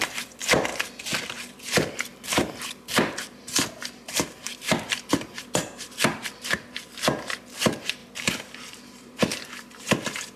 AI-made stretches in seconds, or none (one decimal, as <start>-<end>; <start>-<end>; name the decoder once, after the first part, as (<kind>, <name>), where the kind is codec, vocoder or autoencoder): 0.0-0.7 (vocoder, BigVGAN v2); 1.2-10.4